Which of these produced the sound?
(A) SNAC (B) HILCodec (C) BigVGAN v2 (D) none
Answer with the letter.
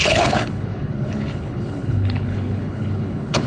B